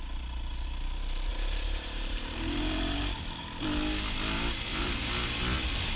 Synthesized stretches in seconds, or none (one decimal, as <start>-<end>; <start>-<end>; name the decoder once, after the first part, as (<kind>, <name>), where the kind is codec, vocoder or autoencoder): 1.3-3.2 (vocoder, BigVGAN v2); 4.7-5.4